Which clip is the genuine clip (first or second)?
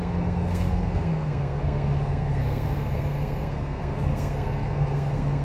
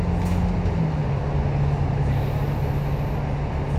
second